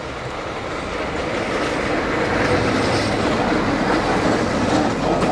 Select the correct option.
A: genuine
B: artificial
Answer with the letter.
A